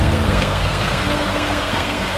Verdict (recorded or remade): remade